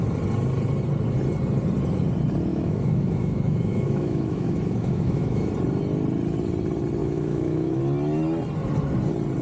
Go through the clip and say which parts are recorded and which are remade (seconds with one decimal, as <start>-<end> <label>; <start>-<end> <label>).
0.0-2.5 recorded; 2.5-5.5 remade; 5.5-7.0 recorded; 7.0-7.8 remade; 7.8-9.4 recorded